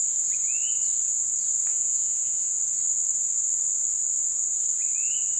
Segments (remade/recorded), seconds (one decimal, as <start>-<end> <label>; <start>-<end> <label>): 0.0-1.7 recorded; 1.7-2.5 remade; 2.5-5.4 recorded